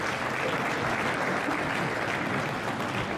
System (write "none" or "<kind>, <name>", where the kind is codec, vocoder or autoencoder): none